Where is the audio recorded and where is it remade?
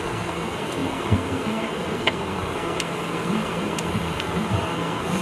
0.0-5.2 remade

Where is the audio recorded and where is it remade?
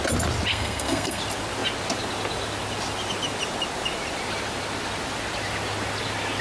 0.0-0.5 recorded; 0.5-1.2 remade; 1.2-6.4 recorded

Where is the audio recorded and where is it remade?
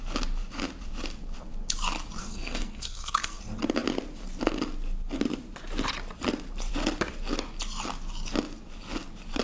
0.0-2.2 recorded; 2.2-3.4 remade; 3.4-9.4 recorded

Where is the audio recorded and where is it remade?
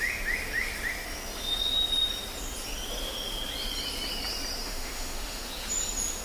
0.0-4.6 recorded; 4.6-5.5 remade; 5.5-6.2 recorded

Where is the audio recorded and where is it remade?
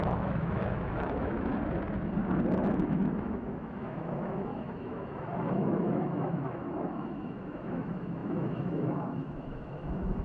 0.0-1.5 remade; 1.5-2.7 recorded; 2.7-10.2 remade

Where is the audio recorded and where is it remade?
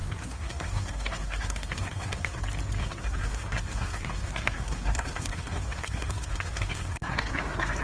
0.0-2.4 remade; 2.4-2.8 recorded; 2.8-7.8 remade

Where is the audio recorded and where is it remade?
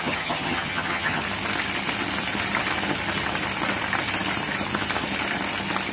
0.0-1.2 remade; 1.2-5.9 recorded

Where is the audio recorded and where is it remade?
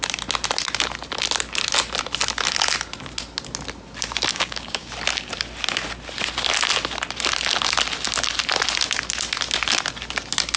0.0-4.3 recorded; 4.3-4.9 remade; 4.9-10.6 recorded